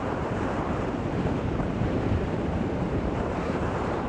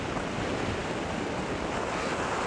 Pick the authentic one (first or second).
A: second